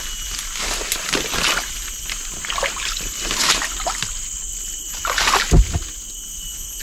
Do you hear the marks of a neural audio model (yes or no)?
no